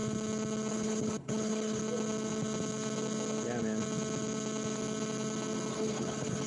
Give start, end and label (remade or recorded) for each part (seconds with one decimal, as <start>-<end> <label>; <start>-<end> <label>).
0.0-0.7 recorded; 0.7-1.8 remade; 1.8-5.7 recorded; 5.7-6.5 remade